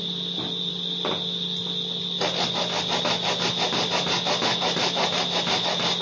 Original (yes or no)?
yes